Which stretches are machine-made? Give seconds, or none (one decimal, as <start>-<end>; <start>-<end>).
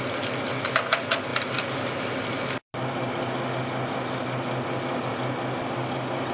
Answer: none